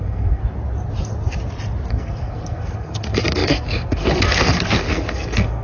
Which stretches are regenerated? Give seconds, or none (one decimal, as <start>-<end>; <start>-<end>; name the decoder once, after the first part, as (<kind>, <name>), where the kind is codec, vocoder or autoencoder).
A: 0.0-0.4 (codec, SNAC); 1.9-5.6